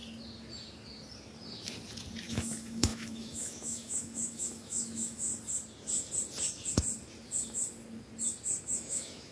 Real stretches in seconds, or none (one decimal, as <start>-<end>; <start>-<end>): 0.0-2.3; 5.3-8.6